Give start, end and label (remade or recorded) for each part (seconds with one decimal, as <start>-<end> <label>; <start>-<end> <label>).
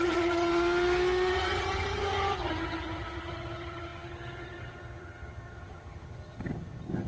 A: 0.0-0.5 remade; 0.5-1.3 recorded; 1.3-7.1 remade